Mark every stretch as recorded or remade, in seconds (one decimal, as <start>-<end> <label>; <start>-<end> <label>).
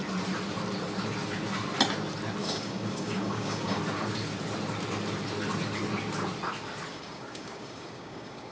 0.0-2.4 recorded; 2.4-3.8 remade; 3.8-6.9 recorded; 6.9-8.5 remade